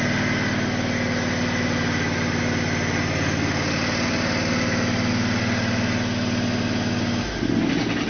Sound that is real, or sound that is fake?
real